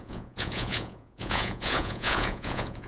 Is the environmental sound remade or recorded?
remade